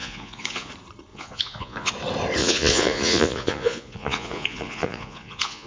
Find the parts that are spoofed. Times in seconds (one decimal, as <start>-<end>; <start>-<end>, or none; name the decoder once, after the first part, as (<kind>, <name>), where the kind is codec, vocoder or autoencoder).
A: 0.0-0.7 (vocoder, Vocos); 1.1-1.9; 2.4-5.7

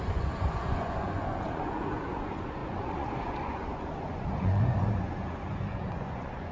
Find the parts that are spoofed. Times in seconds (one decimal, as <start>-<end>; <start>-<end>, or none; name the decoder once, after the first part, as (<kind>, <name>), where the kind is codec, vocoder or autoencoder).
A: 0.0-6.5 (vocoder, Vocos)

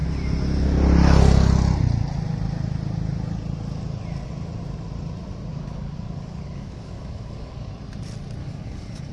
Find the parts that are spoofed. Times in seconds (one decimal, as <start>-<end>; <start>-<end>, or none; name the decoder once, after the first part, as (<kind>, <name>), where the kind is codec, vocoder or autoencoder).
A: 5.5-7.7 (codec, DAC); 8.4-9.1

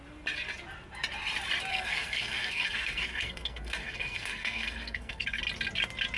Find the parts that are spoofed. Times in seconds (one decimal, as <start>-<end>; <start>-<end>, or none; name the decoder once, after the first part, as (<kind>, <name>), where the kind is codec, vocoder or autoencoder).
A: 1.7-5.4 (codec, SNAC)

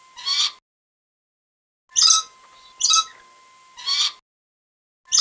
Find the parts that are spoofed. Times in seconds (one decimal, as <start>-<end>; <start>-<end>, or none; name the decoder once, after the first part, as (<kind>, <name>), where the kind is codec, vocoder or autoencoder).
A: none

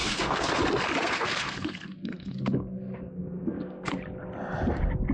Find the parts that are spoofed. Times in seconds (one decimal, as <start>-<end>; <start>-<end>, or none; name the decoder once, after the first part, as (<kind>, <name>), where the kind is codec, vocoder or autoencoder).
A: 0.0-0.6 (codec, SNAC); 1.0-4.0

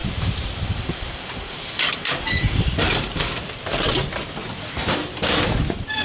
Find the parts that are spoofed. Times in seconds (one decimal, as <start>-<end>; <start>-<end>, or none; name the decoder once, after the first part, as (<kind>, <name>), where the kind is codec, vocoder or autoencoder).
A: 0.0-3.6 (vocoder, BigVGAN v2)

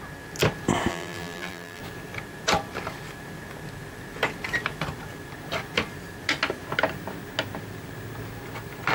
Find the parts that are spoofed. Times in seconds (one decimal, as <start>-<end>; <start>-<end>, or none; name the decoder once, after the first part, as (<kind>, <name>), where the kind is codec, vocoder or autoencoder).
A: 0.9-1.8 (vocoder, BigVGAN v2)